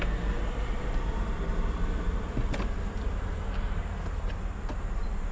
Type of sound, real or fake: real